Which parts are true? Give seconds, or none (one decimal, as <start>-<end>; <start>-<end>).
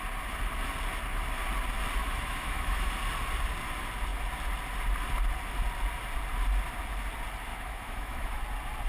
0.0-2.0; 2.9-7.5; 8.4-8.9